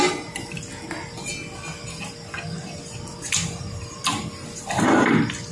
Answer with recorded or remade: recorded